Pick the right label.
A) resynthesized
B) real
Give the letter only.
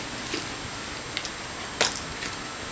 B